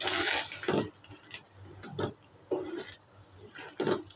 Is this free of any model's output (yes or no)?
yes